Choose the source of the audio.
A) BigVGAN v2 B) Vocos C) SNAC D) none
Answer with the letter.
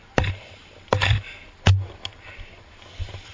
D